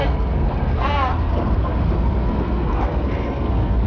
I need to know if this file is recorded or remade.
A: remade